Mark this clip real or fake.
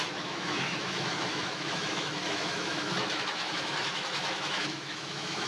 fake